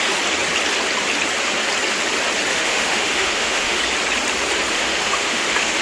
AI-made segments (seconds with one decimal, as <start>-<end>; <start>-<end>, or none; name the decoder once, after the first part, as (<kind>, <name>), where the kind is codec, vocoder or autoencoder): 2.5-3.8 (autoencoder, DAC-VAE); 4.7-5.8